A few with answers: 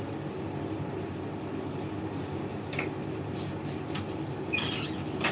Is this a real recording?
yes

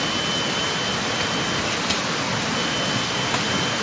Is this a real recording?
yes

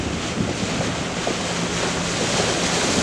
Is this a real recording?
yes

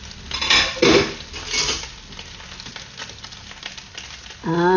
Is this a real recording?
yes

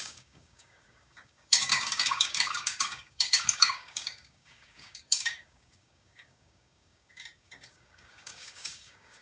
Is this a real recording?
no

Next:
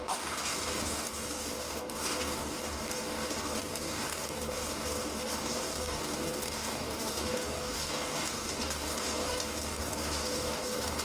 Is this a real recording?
no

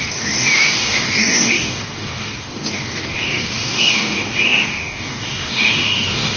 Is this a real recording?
no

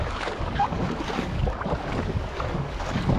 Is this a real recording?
no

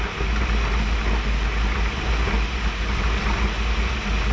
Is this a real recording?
yes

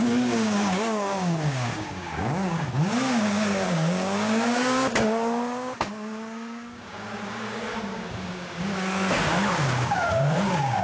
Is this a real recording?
no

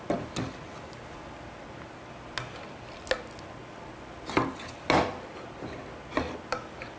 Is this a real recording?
yes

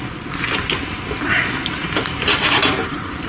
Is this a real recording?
yes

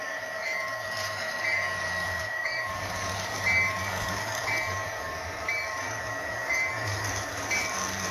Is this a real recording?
no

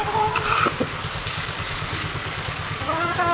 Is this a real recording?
no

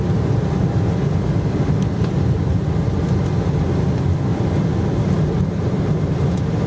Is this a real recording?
yes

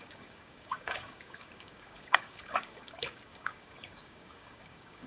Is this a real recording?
no